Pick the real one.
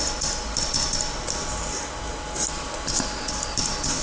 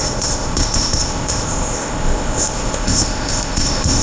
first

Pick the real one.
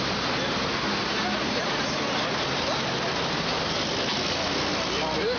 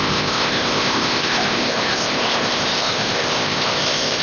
first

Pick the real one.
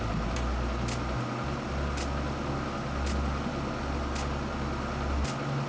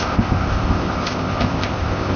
first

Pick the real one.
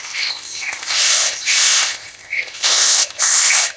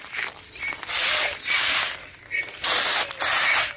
second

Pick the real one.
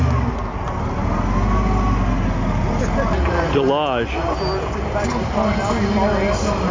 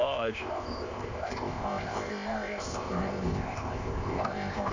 first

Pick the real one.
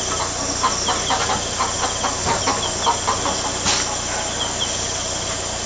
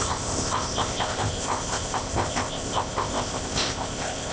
first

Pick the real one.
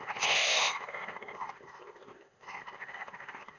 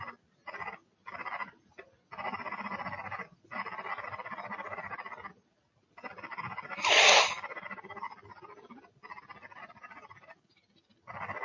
second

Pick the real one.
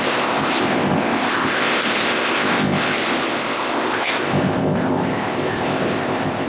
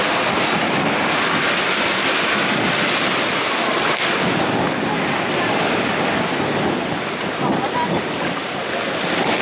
second